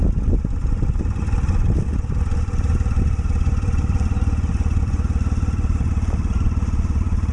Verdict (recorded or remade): recorded